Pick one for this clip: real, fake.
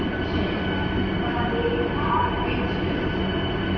real